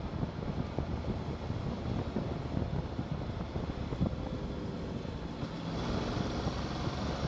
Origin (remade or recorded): recorded